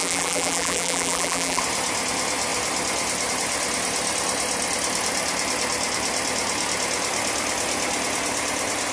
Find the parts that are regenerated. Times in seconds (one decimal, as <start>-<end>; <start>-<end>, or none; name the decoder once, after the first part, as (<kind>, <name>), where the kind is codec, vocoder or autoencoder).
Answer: 0.0-1.6 (vocoder, BigVGAN v2)